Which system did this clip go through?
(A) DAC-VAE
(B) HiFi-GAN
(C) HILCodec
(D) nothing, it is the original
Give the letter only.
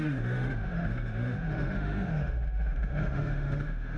A